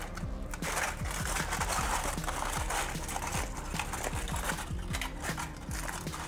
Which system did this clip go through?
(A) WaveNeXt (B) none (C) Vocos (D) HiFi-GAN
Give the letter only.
B